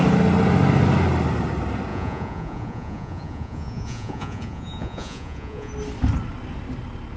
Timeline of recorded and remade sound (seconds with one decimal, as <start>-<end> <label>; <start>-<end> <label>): 0.0-1.9 recorded; 1.9-5.7 remade; 5.7-7.2 recorded